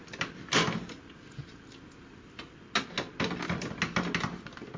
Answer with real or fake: real